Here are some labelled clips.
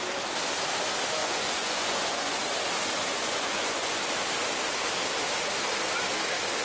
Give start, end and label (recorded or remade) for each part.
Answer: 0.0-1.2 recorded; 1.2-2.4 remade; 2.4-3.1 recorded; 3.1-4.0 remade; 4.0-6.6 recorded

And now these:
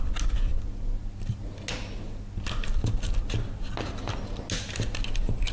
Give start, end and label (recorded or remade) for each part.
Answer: 0.0-5.5 recorded

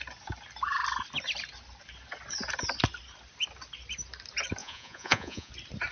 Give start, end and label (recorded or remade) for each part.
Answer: 0.0-4.6 recorded; 4.6-5.5 remade; 5.5-5.9 recorded

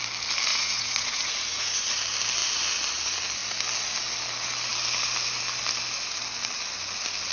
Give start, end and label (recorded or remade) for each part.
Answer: 0.0-0.5 recorded; 0.5-2.0 remade; 2.0-7.3 recorded

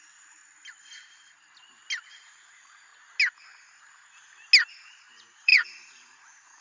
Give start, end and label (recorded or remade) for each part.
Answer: 0.0-0.4 remade; 0.4-2.1 recorded; 2.1-2.9 remade; 2.9-4.8 recorded; 4.8-6.6 remade

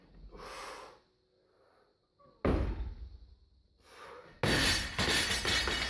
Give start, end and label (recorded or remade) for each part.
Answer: 0.0-5.9 recorded